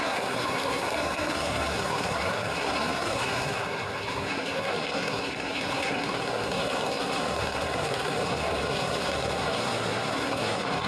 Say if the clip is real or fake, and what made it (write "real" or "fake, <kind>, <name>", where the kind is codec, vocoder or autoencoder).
fake, codec, SNAC